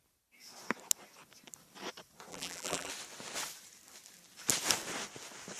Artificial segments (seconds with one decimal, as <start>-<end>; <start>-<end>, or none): 2.3-2.9